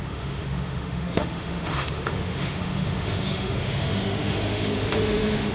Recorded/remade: remade